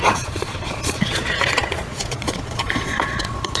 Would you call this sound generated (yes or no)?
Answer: yes